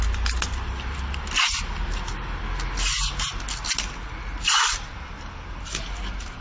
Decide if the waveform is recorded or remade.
recorded